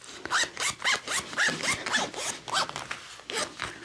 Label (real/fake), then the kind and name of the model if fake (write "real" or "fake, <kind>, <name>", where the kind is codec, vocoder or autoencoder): real